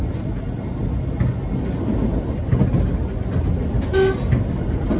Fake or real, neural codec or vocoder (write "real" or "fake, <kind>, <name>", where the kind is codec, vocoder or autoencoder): real